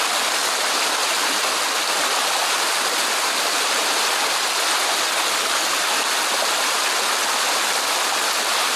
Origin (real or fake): real